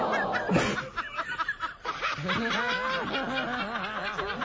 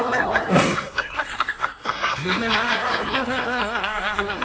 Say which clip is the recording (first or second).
first